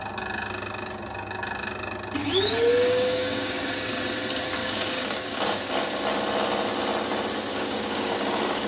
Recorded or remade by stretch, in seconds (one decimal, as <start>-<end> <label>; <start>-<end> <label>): 0.0-2.2 recorded; 2.2-3.6 remade; 3.6-4.6 recorded; 4.6-5.7 remade; 5.7-7.5 recorded; 7.5-8.7 remade

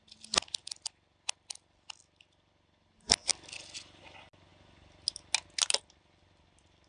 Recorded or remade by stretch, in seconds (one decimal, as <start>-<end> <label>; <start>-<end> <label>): 0.0-6.9 recorded

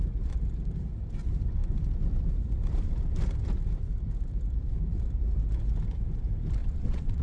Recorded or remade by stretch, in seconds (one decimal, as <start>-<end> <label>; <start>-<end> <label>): 0.0-6.6 recorded; 6.6-7.2 remade

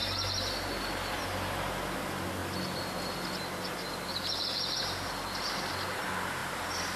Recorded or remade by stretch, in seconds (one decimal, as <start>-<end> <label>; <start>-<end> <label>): 0.0-7.0 recorded

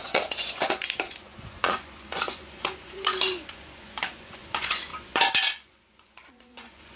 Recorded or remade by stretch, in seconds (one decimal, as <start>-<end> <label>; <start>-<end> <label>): 0.0-7.0 remade

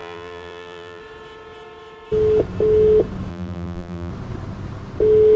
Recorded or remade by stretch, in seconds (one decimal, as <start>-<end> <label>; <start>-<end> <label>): 0.0-1.0 remade; 1.0-3.3 recorded; 3.3-4.1 remade; 4.1-5.4 recorded